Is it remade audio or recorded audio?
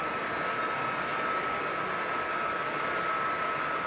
recorded